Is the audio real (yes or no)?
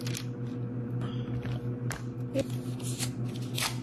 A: yes